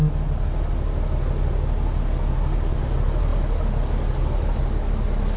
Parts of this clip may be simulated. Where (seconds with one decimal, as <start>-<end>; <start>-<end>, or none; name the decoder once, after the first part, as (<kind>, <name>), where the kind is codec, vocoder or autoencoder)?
2.7-3.3 (vocoder, BigVGAN v2)